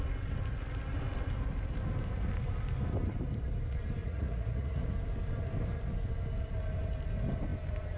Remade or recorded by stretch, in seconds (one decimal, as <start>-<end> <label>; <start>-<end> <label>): 0.0-4.0 recorded; 4.0-4.8 remade; 4.8-8.0 recorded